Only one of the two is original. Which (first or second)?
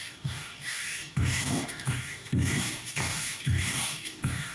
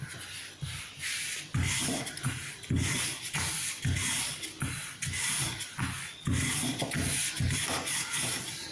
second